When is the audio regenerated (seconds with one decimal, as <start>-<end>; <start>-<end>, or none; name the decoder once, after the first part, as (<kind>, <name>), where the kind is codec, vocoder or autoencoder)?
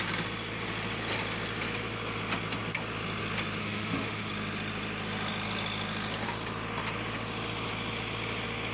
3.6-4.3 (autoencoder, DAC-VAE)